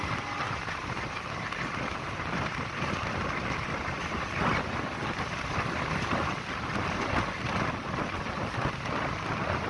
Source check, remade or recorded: recorded